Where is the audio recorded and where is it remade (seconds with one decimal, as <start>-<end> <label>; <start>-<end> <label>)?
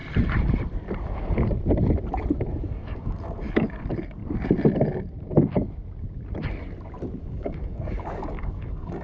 0.0-2.6 recorded; 2.6-4.2 remade; 4.2-7.2 recorded; 7.2-9.0 remade